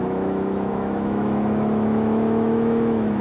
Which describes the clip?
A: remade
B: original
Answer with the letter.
A